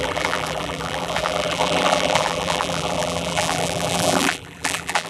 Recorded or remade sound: remade